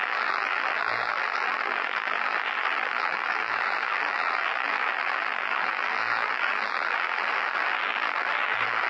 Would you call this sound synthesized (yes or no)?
yes